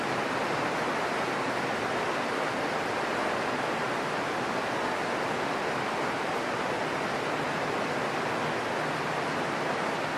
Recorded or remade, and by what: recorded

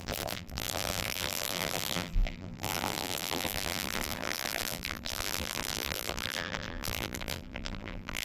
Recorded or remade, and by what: remade, vocoder, BigVGAN v2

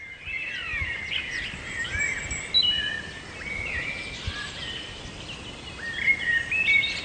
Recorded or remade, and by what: recorded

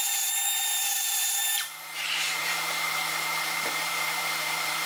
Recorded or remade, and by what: remade, vocoder, BigVGAN v2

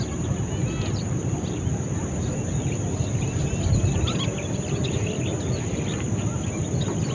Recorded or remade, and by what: recorded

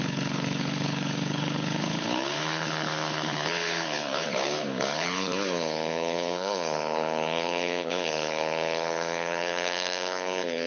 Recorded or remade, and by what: remade, codec, HILCodec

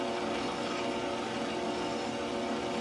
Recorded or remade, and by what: recorded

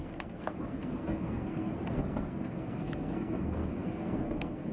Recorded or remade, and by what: remade, codec, SNAC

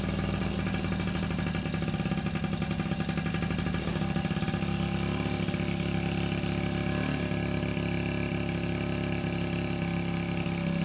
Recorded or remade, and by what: recorded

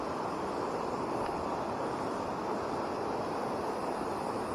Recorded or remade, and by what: recorded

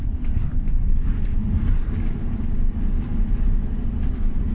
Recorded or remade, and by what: remade, vocoder, BigVGAN v2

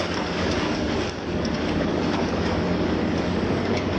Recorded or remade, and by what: remade, codec, DAC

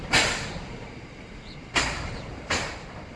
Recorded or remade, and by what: recorded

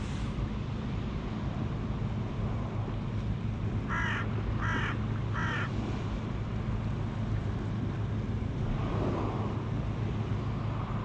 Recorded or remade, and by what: recorded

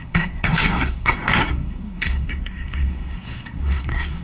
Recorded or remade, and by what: remade, codec, SNAC